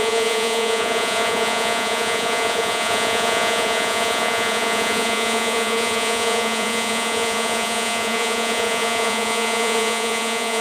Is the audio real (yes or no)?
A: no